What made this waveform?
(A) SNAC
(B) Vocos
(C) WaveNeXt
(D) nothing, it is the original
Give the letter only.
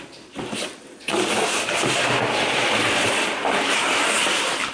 D